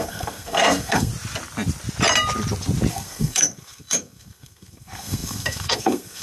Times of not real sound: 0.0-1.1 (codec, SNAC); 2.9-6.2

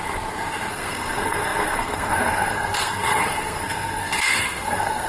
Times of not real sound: 0.7-5.1 (codec, SNAC)

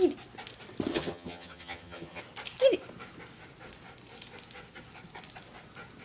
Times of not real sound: 0.9-2.2 (vocoder, HiFi-GAN)

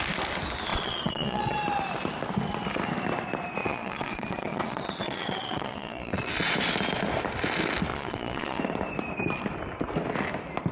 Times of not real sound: 0.7-1.6 (vocoder, Vocos); 3.6-6.3; 7.9-8.6